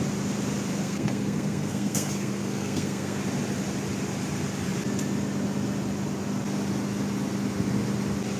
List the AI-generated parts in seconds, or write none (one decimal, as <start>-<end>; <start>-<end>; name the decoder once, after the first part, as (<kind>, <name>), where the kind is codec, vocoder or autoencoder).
0.8-3.2 (codec, SNAC)